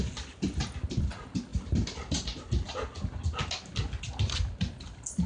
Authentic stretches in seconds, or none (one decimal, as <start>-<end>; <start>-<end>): 0.0-5.3